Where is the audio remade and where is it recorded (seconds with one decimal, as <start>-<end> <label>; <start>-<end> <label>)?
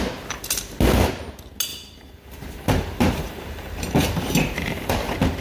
0.0-1.7 recorded; 1.7-4.9 remade; 4.9-5.4 recorded